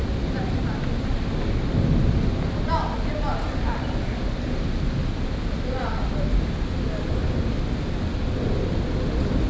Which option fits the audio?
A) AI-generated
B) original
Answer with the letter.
B